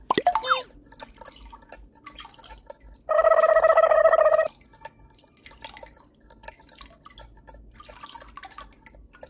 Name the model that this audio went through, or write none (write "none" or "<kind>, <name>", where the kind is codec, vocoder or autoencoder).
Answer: none